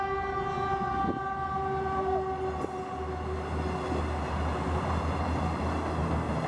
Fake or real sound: real